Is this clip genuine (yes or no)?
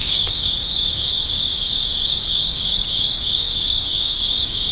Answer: no